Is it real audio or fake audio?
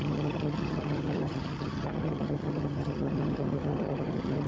fake